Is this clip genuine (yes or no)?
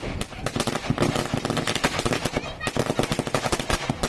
yes